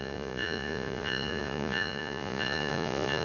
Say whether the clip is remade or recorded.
remade